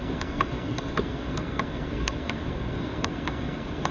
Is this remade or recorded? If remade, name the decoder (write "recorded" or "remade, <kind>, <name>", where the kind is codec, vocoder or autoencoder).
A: remade, codec, SNAC